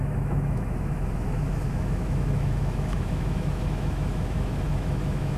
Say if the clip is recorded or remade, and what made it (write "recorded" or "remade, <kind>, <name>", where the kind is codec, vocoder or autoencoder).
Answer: remade, autoencoder, DAC-VAE